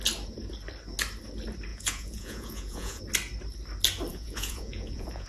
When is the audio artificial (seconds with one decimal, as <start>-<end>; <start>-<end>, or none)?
1.7-3.0; 4.1-5.3